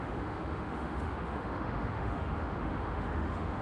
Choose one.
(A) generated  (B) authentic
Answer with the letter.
A